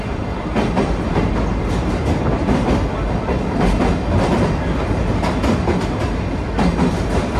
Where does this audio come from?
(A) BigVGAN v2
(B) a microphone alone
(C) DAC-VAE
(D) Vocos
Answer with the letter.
B